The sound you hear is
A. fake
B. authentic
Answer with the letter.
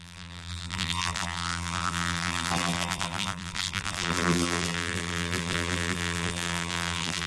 A